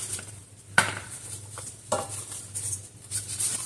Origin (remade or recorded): remade